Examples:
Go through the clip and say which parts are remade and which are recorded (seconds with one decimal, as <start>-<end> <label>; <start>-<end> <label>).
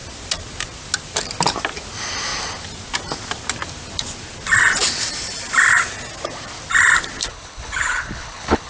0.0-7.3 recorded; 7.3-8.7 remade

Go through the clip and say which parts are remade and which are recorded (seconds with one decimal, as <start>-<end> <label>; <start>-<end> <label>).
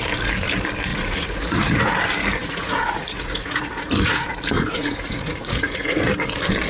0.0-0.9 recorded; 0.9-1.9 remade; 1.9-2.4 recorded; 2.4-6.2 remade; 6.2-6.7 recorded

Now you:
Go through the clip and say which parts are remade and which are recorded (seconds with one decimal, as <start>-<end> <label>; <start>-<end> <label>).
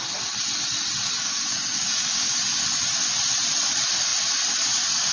0.0-1.2 recorded; 1.2-2.3 remade; 2.3-5.1 recorded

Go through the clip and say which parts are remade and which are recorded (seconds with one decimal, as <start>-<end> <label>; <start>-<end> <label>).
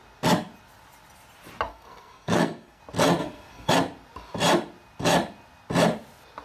0.0-1.7 recorded; 1.7-2.8 remade; 2.8-3.2 recorded; 3.2-3.7 remade; 3.7-6.4 recorded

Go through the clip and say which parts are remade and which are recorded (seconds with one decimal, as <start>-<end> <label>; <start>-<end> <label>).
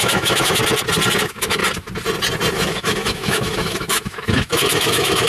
0.0-0.6 remade; 0.6-1.2 recorded; 1.2-1.6 remade; 1.6-2.5 recorded; 2.5-5.3 remade